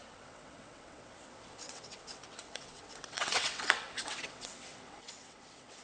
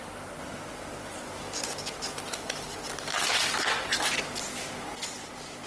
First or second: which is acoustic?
second